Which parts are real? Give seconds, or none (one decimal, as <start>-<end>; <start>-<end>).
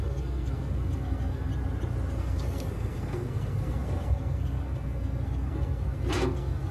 1.5-2.1